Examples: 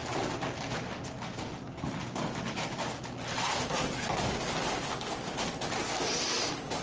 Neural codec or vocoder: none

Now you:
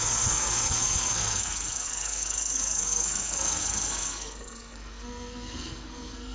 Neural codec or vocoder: codec, SNAC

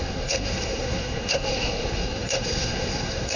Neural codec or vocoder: codec, SNAC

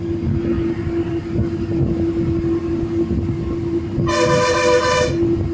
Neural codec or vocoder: none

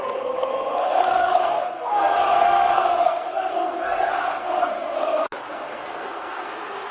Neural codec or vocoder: codec, SNAC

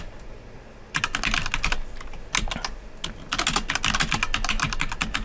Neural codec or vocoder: none